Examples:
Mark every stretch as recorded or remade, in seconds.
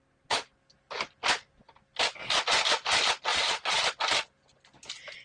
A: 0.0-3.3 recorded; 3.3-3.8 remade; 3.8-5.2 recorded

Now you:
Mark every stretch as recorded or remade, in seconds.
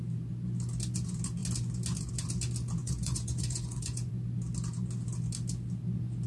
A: 0.0-2.8 recorded; 2.8-4.1 remade; 4.1-6.3 recorded